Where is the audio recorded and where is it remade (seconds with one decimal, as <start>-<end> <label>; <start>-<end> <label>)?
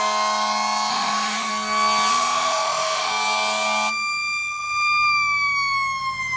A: 0.0-0.9 recorded; 0.9-1.5 remade; 1.5-2.1 recorded; 2.1-3.1 remade; 3.1-6.4 recorded